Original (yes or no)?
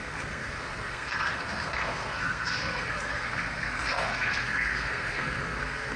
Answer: no